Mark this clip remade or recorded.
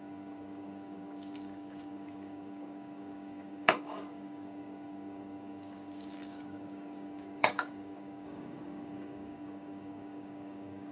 remade